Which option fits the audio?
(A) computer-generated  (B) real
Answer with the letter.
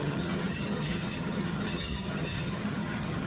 A